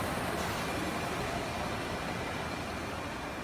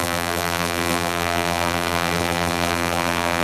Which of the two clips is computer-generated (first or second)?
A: second